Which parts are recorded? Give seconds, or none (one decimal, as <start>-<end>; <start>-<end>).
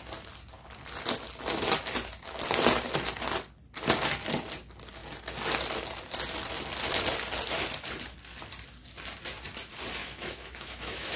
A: 0.0-10.0